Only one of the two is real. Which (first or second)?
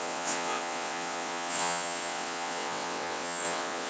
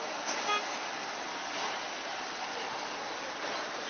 second